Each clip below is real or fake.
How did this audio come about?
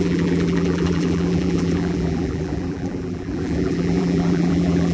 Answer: fake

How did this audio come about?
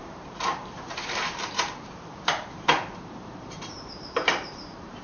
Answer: fake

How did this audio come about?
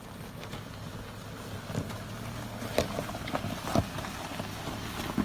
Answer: real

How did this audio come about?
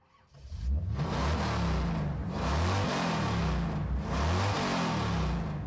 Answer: real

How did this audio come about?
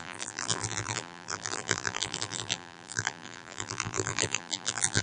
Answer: fake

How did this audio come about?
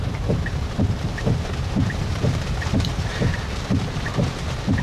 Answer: fake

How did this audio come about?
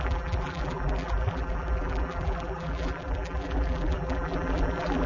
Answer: fake